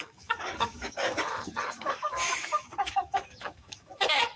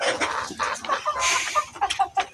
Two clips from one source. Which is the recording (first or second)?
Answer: second